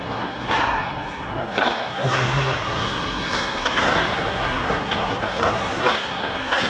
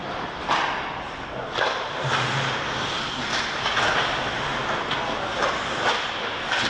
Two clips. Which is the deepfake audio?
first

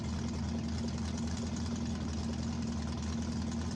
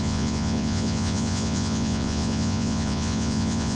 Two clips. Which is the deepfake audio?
second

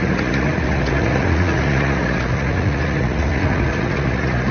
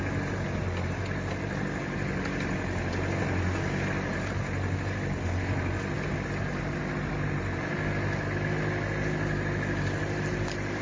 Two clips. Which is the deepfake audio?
first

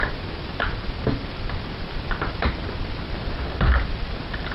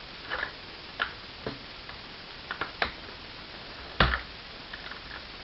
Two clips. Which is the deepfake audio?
first